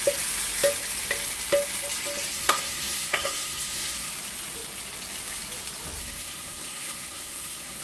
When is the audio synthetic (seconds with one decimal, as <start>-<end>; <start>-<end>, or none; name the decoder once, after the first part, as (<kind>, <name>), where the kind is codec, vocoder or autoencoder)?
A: 2.3-4.1 (codec, SNAC); 6.0-7.8